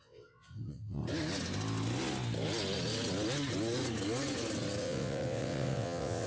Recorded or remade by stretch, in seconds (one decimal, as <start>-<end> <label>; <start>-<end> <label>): 0.0-1.0 remade; 1.0-4.8 recorded; 4.8-6.3 remade